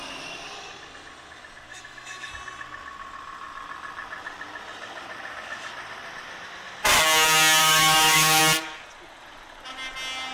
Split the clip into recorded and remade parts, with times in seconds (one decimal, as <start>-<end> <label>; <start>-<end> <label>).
0.0-1.7 recorded; 1.7-2.3 remade; 2.3-7.6 recorded; 7.6-8.4 remade; 8.4-10.3 recorded